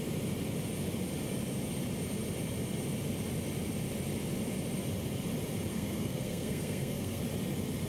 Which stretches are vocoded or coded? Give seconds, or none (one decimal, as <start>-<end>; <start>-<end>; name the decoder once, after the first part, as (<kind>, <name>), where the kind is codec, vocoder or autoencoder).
5.7-7.2 (codec, SNAC)